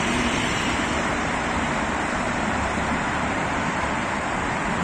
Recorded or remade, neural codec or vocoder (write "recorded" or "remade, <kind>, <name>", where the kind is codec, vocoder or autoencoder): remade, vocoder, BigVGAN v2